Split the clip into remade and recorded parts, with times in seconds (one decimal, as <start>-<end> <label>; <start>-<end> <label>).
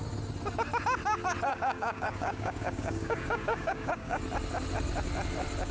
0.0-1.5 recorded; 1.5-4.2 remade; 4.2-5.7 recorded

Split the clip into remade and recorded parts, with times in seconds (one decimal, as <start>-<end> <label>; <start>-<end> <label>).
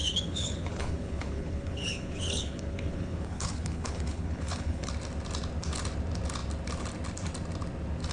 0.0-4.9 remade; 4.9-8.1 recorded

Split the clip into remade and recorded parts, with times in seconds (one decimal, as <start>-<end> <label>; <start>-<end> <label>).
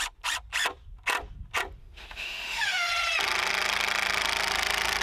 0.0-1.8 recorded; 1.8-2.9 remade; 2.9-5.0 recorded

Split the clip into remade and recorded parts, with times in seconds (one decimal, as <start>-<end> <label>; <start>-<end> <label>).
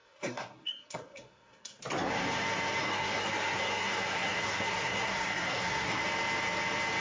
0.0-1.8 remade; 1.8-2.8 recorded; 2.8-6.0 remade; 6.0-7.0 recorded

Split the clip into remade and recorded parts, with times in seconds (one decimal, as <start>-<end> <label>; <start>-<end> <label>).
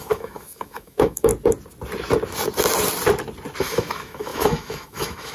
0.0-1.3 remade; 1.3-3.6 recorded; 3.6-5.3 remade